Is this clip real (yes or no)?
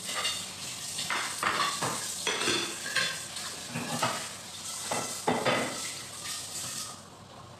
yes